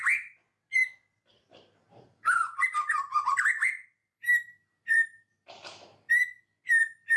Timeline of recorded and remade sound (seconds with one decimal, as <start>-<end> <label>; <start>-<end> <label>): 0.0-1.3 recorded; 1.3-3.3 remade; 3.3-4.0 recorded; 4.0-6.1 remade; 6.1-7.2 recorded